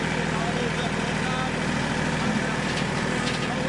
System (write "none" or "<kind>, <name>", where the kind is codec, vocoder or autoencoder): none